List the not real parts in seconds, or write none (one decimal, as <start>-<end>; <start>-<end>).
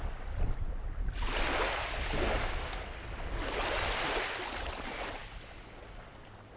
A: none